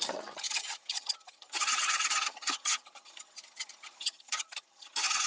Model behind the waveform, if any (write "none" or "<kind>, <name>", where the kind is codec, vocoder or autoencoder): vocoder, HiFi-GAN